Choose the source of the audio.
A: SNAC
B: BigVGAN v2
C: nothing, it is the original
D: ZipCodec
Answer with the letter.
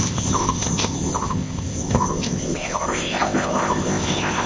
D